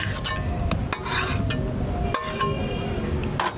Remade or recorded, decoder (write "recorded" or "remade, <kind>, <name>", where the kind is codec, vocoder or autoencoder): recorded